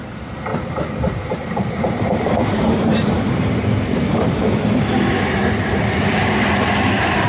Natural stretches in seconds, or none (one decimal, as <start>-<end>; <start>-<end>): 0.0-0.5; 4.4-7.3